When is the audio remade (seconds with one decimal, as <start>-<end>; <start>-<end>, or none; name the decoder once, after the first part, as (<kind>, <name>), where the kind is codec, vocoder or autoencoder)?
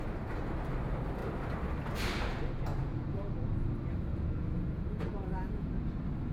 2.7-3.3 (vocoder, Vocos); 4.1-5.7